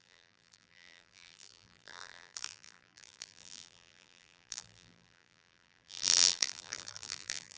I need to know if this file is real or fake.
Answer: fake